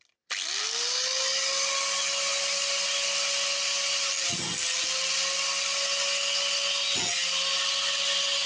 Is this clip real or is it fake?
real